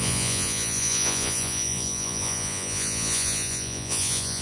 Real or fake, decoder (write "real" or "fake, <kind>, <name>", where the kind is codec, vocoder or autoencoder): fake, vocoder, Vocos